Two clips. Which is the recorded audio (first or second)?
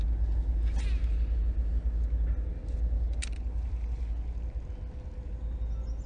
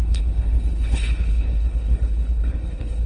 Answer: first